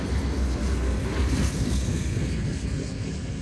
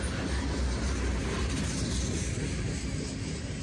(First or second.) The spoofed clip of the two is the first